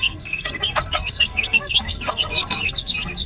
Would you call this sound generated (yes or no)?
yes